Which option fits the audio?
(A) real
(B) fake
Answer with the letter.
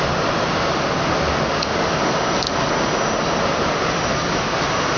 A